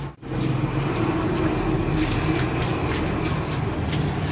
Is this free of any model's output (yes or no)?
yes